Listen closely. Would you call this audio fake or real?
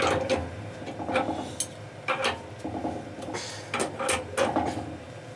real